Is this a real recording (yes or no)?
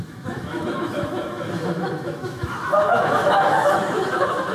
no